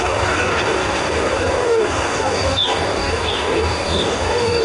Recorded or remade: remade